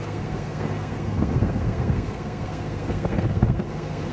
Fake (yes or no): yes